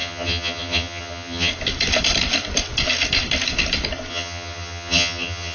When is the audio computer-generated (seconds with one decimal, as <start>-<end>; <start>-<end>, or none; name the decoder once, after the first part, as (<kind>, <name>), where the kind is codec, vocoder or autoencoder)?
0.0-1.5 (vocoder, HiFi-GAN); 4.1-5.5

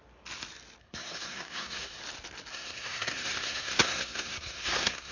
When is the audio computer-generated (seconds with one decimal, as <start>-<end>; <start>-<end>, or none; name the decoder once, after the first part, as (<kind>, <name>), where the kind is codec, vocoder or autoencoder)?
0.8-2.0 (codec, SNAC); 2.5-5.1

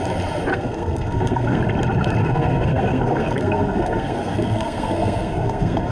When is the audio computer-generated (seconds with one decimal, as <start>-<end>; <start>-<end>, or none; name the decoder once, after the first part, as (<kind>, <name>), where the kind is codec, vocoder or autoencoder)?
0.5-1.6 (codec, SNAC); 2.2-5.9

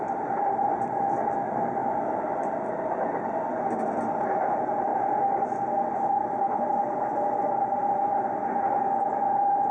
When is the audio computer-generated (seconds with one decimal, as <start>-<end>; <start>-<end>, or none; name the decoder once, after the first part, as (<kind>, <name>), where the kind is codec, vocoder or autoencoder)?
1.8-3.6 (vocoder, BigVGAN v2)

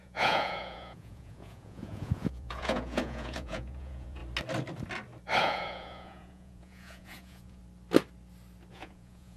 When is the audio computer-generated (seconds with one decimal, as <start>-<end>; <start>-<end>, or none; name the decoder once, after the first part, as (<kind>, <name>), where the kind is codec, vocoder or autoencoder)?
0.0-4.2 (vocoder, Vocos); 5.4-7.6; 8.7-9.4